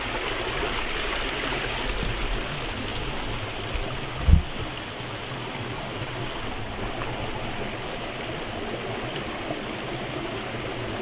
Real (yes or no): yes